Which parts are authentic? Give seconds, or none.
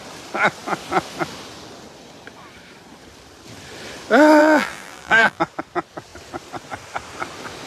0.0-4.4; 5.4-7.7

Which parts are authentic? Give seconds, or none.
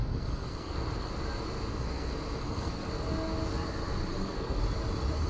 1.1-1.7; 2.9-4.1; 4.6-5.3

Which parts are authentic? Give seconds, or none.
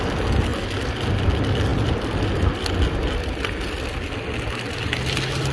0.0-5.5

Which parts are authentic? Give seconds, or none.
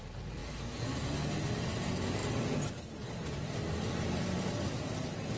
0.0-5.4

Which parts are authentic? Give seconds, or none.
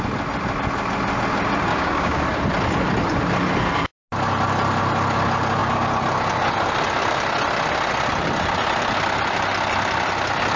0.0-1.7; 2.2-10.6